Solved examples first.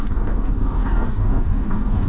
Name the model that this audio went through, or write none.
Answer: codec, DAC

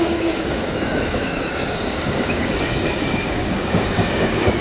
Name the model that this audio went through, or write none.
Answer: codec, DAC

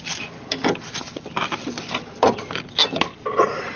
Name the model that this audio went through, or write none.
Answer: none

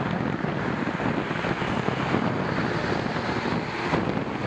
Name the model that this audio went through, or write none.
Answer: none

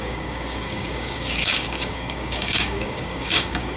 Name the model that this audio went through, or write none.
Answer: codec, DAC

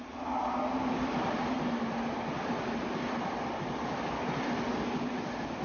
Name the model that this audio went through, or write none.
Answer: none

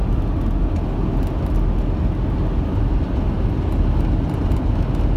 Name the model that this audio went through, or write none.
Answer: none